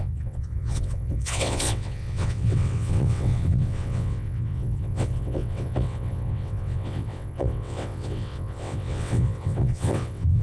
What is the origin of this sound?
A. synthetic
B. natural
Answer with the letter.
A